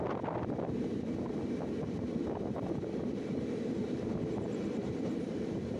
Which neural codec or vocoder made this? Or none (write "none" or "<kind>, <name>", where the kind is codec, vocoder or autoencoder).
none